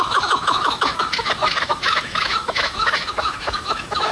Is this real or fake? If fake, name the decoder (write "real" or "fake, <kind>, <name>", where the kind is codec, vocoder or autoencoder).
fake, autoencoder, DAC-VAE